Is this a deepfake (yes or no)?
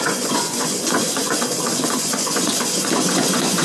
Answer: yes